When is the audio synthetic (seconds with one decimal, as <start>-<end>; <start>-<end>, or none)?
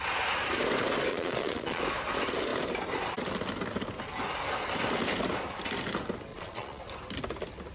1.1-1.8; 6.3-6.9